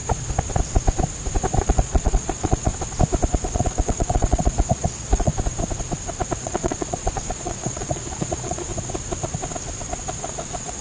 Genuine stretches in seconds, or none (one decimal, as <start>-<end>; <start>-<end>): 0.0-1.6; 2.7-3.3; 5.3-6.4; 8.7-10.2

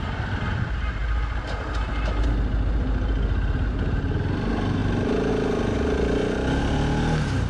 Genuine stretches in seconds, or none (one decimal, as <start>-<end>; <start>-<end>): 0.0-7.5

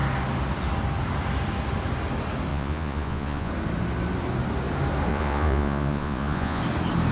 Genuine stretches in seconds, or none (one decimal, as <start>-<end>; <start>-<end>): 0.0-2.5; 3.5-5.1; 6.6-7.1

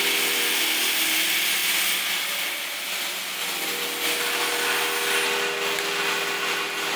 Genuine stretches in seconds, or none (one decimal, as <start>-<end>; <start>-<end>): 0.0-7.0